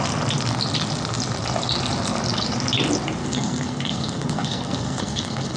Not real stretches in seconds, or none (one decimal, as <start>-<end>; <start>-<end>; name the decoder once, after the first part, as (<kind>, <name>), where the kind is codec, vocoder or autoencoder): 3.2-5.6 (codec, SNAC)